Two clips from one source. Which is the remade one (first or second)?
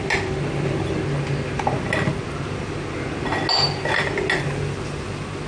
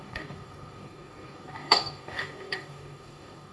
second